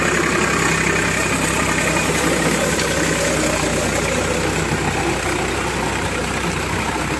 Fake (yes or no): no